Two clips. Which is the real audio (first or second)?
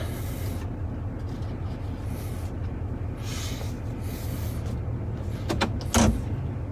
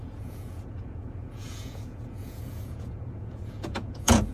first